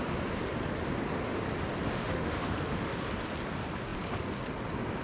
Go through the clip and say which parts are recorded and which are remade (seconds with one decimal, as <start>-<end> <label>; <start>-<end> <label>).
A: 0.0-2.0 recorded; 2.0-2.9 remade; 2.9-5.0 recorded